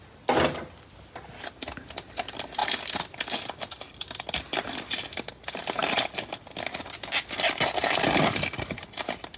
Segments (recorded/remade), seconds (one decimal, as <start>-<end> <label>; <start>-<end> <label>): 0.0-5.8 recorded; 5.8-7.2 remade; 7.2-9.4 recorded